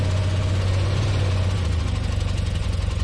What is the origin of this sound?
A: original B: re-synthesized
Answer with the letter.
B